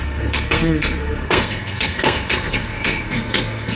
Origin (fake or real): fake